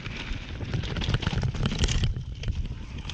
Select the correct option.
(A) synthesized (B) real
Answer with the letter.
B